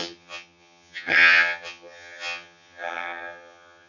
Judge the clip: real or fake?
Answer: fake